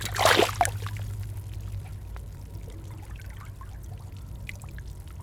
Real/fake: real